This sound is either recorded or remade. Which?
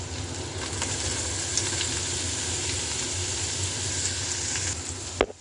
recorded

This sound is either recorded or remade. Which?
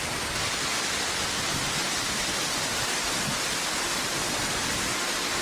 recorded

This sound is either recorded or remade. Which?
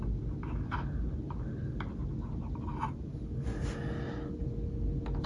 recorded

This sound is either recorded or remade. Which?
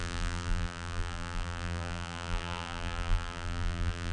remade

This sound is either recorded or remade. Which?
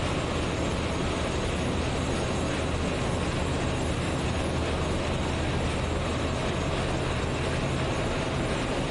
recorded